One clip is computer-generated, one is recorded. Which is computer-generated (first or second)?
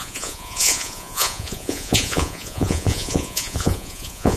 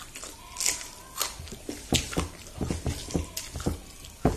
first